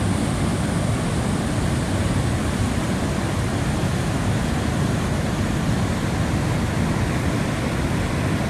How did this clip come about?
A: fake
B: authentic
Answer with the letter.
B